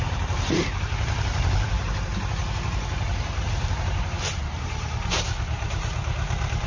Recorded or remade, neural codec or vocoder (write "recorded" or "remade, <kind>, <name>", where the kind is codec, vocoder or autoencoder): remade, vocoder, BigVGAN v2